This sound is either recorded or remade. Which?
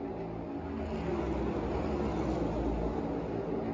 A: recorded